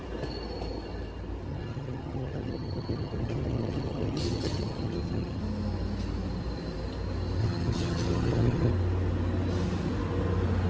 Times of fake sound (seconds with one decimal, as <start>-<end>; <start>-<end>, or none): 1.5-5.4; 7.4-8.7